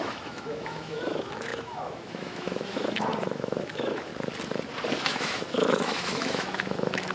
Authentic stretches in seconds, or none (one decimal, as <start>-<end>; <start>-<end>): 4.1-5.0